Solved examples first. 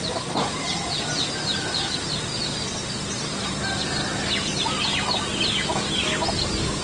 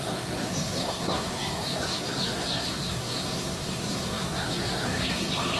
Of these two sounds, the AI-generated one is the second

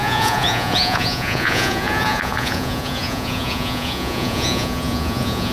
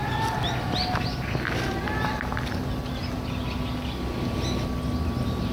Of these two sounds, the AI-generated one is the first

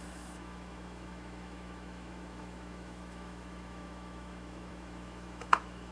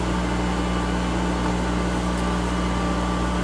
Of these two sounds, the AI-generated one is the first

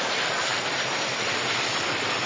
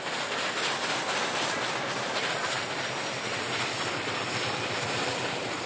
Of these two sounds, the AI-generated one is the first